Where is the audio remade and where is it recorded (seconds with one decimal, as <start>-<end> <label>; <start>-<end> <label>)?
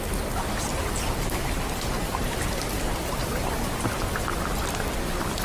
0.0-0.7 recorded; 0.7-3.9 remade; 3.9-5.4 recorded